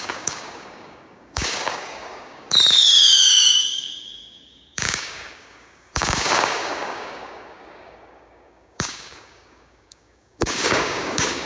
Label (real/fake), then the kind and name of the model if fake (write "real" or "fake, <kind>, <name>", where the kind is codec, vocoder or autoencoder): fake, codec, DAC